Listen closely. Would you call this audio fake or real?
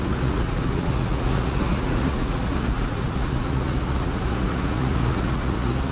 fake